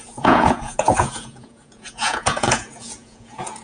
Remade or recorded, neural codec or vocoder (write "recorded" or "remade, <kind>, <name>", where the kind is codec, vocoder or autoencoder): remade, vocoder, Vocos